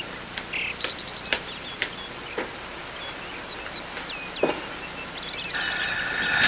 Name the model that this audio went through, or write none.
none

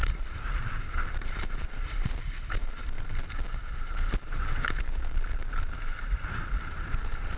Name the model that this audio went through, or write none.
vocoder, BigVGAN v2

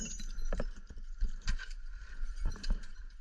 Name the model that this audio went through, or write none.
vocoder, BigVGAN v2